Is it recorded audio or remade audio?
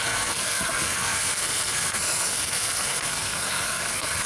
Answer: remade